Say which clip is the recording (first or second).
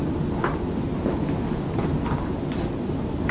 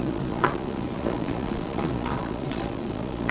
first